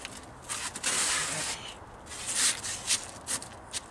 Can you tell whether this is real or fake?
real